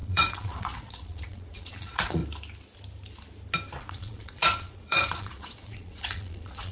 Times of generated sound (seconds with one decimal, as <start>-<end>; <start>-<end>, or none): 0.0-2.2; 3.8-6.7